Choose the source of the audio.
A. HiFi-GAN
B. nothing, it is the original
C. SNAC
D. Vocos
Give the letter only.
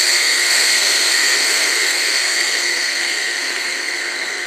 C